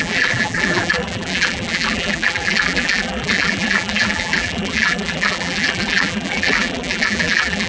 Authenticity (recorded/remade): remade